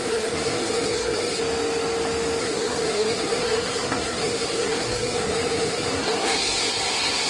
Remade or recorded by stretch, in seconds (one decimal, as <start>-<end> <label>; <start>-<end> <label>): 0.0-1.4 remade; 1.4-2.4 recorded; 2.4-7.3 remade